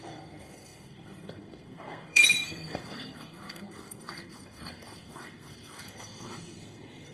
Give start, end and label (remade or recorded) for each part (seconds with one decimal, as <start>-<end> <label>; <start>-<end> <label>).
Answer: 0.0-7.1 remade